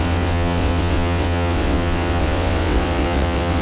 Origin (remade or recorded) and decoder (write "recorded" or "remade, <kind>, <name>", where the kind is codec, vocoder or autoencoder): remade, vocoder, WaveNeXt